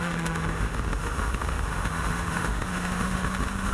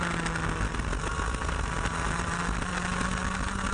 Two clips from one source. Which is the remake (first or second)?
first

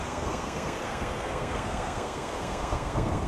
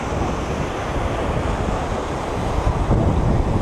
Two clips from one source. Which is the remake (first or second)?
first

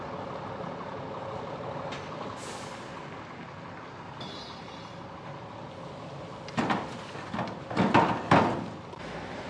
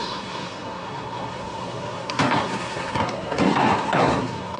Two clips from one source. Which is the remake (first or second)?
second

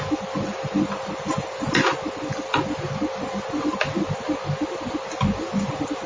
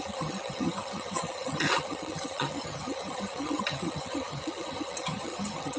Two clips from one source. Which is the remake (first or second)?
second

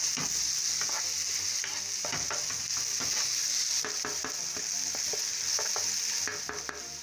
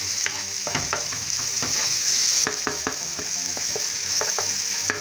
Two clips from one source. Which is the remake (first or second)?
second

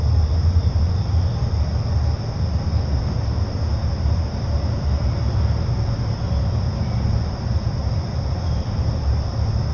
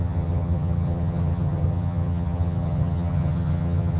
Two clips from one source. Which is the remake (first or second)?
second